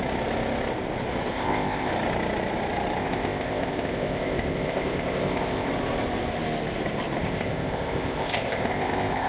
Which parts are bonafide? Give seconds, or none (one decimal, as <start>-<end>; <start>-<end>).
0.0-1.3; 1.9-3.0; 5.7-7.2